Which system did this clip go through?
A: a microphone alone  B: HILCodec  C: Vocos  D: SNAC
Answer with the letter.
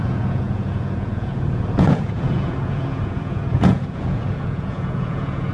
C